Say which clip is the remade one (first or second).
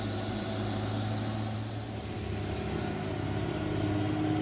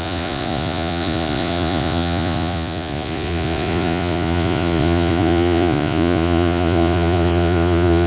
second